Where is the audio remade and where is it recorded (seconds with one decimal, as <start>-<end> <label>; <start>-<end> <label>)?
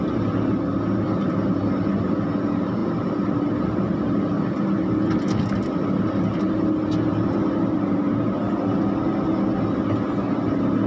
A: 0.0-2.8 recorded; 2.8-6.5 remade; 6.5-7.1 recorded; 7.1-8.1 remade; 8.1-10.9 recorded